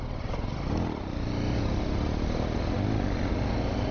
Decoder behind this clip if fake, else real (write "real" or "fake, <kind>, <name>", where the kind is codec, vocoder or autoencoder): real